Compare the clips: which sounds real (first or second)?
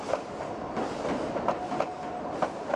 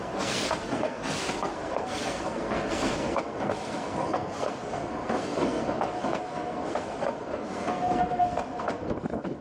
first